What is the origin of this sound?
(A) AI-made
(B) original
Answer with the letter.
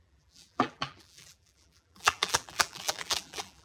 A